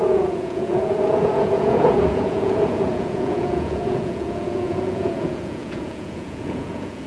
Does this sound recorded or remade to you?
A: remade